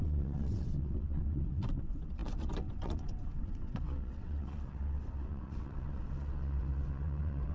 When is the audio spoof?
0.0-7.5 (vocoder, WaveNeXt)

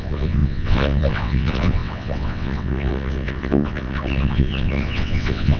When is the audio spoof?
0.0-5.6 (vocoder, WaveNeXt)

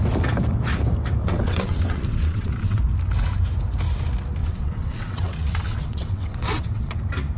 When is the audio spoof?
1.2-2.8 (vocoder, WaveNeXt); 4.4-7.0